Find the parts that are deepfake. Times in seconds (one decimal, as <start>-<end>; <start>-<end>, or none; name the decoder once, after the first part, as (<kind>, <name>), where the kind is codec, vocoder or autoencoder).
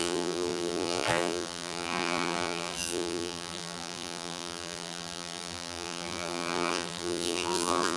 0.0-8.0 (vocoder, BigVGAN v2)